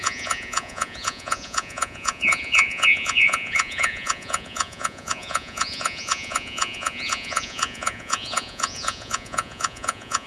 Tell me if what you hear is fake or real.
fake